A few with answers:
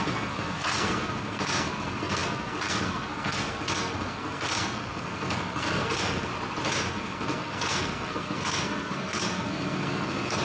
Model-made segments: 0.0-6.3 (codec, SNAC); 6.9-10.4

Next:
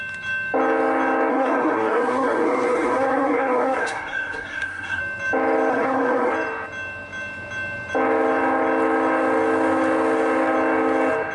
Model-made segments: 1.3-5.0 (codec, SNAC); 5.7-6.3